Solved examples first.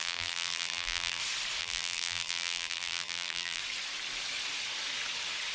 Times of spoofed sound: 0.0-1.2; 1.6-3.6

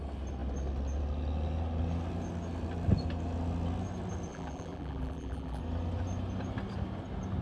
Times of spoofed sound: 4.3-5.6

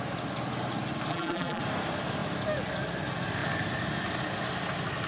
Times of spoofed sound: 1.1-1.6

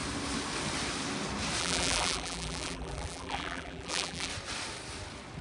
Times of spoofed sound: 1.6-4.3

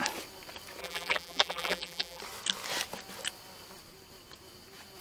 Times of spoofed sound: 0.8-2.2

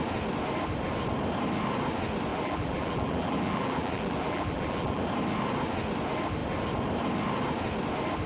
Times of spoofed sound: 2.3-5.0